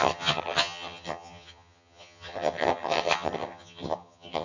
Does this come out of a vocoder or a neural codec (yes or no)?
yes